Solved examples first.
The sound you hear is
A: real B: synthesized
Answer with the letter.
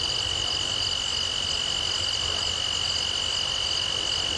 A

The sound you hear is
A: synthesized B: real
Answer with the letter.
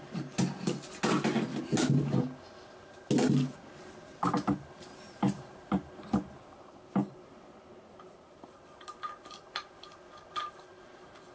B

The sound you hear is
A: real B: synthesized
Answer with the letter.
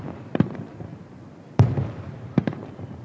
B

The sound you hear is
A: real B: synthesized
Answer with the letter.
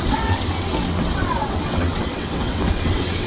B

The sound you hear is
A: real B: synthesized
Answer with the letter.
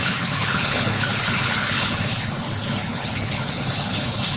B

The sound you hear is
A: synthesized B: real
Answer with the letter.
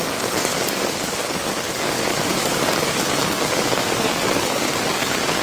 A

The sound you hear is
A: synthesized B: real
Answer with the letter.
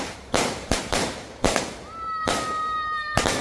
A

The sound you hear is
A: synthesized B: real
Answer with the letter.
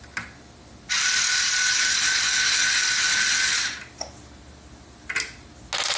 B